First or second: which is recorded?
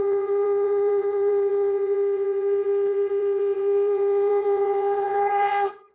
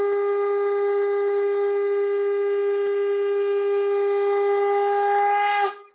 second